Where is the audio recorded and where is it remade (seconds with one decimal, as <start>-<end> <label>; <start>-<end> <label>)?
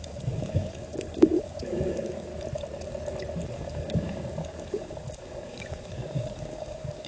0.0-2.3 remade; 2.3-3.5 recorded; 3.5-7.1 remade